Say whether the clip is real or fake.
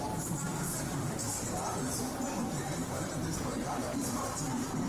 fake